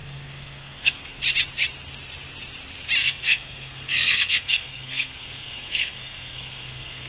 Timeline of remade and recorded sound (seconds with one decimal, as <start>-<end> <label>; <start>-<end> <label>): 0.0-1.2 remade; 1.2-3.0 recorded; 3.0-7.1 remade